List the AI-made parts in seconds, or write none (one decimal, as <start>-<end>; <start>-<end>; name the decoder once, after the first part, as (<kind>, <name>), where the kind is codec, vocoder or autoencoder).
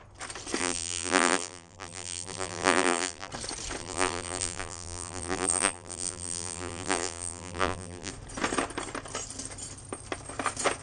0.6-3.3 (vocoder, BigVGAN v2); 3.8-8.1